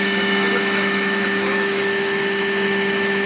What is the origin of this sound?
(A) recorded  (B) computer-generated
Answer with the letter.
B